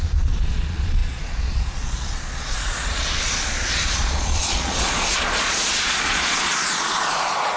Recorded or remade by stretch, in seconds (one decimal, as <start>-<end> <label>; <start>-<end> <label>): 0.0-7.6 remade